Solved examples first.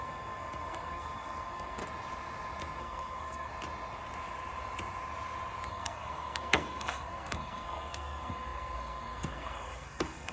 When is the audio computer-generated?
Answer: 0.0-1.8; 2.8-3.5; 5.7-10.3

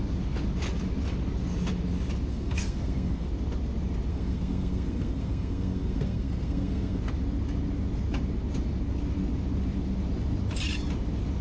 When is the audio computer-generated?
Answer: 2.3-3.3; 4.1-7.0

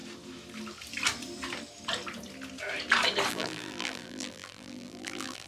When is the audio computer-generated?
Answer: 3.3-5.5

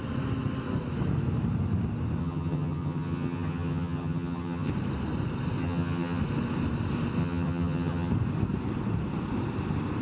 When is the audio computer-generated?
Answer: 2.2-4.7; 5.6-6.2; 7.2-8.1

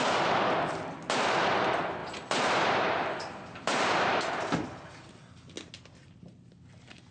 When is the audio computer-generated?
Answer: 2.0-4.2

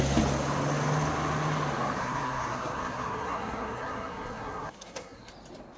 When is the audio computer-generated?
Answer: 2.0-5.3